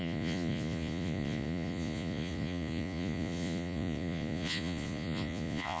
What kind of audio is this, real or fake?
fake